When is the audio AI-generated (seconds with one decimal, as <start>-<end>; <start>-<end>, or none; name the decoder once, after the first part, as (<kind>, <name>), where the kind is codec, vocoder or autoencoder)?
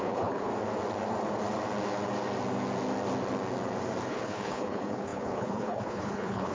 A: 0.0-0.5 (codec, HILCodec); 4.1-6.5